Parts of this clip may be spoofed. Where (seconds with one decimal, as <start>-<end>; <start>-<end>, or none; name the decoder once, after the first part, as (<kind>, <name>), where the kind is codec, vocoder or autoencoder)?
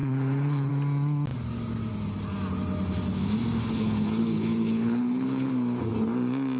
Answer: 0.0-0.7 (codec, HILCodec); 3.6-5.5